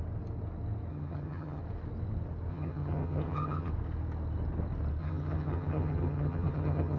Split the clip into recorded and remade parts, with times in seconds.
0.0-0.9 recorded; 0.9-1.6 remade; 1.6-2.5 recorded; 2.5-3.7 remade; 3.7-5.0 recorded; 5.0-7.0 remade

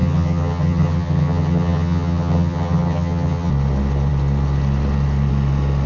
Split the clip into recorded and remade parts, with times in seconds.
0.0-3.5 remade; 3.5-5.9 recorded